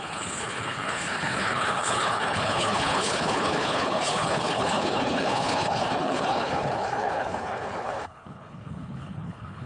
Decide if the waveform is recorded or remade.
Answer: remade